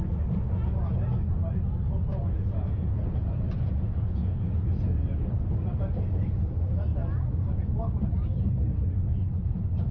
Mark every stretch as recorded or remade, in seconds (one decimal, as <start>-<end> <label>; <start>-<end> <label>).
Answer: 0.0-2.1 recorded; 2.1-4.4 remade; 4.4-9.9 recorded